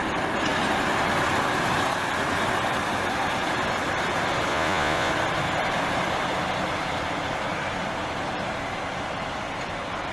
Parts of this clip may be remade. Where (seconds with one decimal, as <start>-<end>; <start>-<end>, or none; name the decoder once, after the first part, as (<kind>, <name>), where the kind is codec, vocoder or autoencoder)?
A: 4.5-5.1 (vocoder, Vocos)